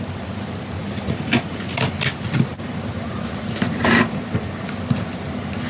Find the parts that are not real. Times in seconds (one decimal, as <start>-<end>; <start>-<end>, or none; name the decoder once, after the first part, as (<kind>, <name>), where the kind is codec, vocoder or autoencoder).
0.8-1.8 (vocoder, BigVGAN v2); 2.5-4.7